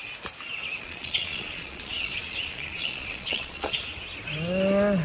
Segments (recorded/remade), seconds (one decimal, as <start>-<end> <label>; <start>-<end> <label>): 0.0-0.8 recorded; 0.8-3.8 remade; 3.8-5.0 recorded